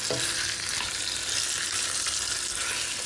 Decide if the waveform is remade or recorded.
recorded